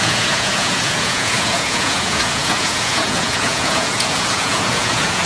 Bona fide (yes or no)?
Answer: no